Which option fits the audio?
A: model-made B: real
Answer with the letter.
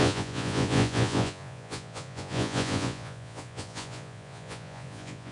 A